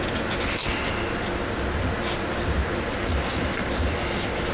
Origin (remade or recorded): recorded